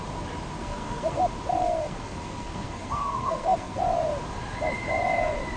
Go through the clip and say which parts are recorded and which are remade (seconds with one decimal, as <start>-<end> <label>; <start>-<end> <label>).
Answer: 0.0-0.6 recorded; 0.6-1.2 remade; 1.2-1.6 recorded; 1.6-3.8 remade; 3.8-5.6 recorded

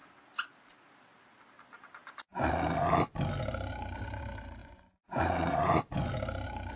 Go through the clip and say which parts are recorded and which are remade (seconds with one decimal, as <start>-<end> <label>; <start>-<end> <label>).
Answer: 0.0-4.6 recorded; 4.6-6.1 remade; 6.1-6.8 recorded